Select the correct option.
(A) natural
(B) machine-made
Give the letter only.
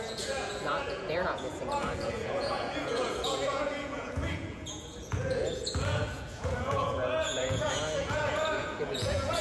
B